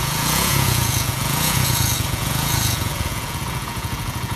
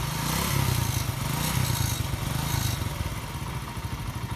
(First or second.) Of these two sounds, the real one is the second